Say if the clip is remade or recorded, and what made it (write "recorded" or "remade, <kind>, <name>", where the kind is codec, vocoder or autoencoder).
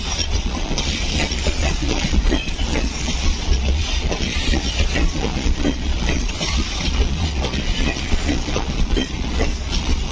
remade, vocoder, Vocos